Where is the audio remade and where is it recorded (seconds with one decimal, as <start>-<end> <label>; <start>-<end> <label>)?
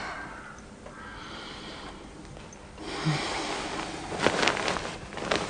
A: 0.0-1.1 recorded; 1.1-1.9 remade; 1.9-5.5 recorded